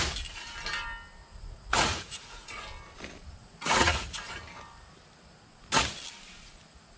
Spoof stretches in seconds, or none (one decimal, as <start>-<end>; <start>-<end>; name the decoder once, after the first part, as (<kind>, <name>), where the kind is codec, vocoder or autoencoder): 1.2-2.6 (vocoder, Vocos); 3.4-4.4

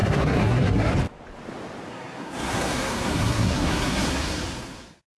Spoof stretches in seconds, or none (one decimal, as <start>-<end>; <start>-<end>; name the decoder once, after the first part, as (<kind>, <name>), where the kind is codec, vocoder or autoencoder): 0.0-0.9 (codec, SNAC); 1.9-5.2

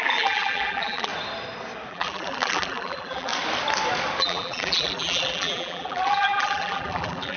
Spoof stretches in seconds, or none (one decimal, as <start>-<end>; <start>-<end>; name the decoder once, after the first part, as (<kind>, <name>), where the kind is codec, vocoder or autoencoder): 0.0-1.1 (vocoder, BigVGAN v2); 1.9-3.3; 4.2-7.4

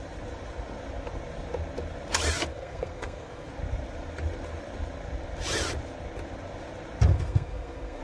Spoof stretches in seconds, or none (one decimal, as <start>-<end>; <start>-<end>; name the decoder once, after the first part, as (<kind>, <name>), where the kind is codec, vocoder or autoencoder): 2.5-3.5 (codec, SNAC); 7.1-8.0